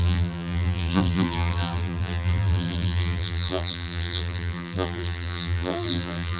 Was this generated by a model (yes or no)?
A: yes